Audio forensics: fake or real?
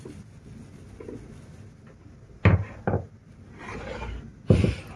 real